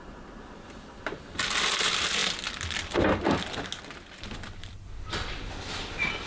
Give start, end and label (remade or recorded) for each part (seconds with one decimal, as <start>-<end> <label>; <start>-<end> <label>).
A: 0.0-6.3 recorded